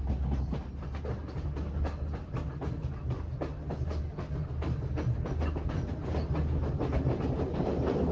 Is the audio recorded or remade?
recorded